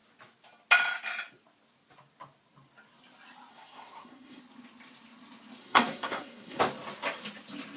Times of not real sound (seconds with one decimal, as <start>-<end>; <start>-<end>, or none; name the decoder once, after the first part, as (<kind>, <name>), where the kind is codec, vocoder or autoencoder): 3.5-4.4 (codec, SNAC); 5.6-6.6